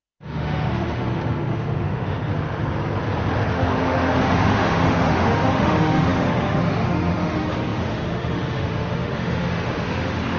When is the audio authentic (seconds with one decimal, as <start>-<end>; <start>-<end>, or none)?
2.3-3.5